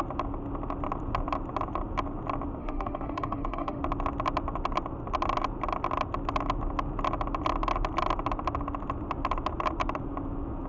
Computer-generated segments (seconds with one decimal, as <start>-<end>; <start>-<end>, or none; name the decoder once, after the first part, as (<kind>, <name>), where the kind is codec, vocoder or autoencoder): 2.6-3.8 (autoencoder, DAC-VAE)